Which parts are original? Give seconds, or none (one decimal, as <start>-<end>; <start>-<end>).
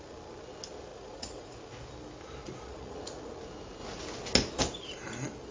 0.0-0.9; 1.6-2.4; 3.3-5.5